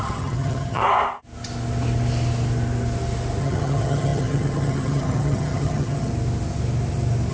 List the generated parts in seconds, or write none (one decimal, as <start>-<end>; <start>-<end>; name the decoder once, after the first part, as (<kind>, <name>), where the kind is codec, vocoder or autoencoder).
0.0-0.8 (vocoder, HiFi-GAN); 3.4-6.1